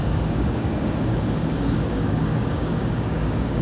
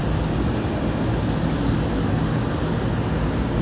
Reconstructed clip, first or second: first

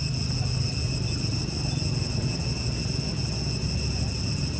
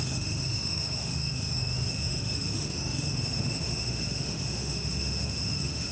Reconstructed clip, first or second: second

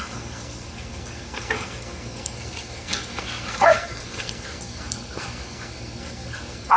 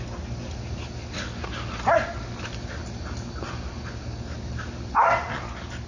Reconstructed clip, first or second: first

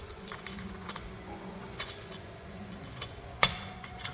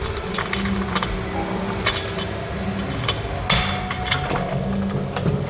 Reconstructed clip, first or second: first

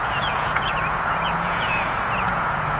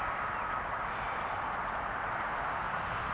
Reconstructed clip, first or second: first